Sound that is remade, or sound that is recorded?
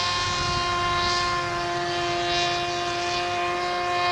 recorded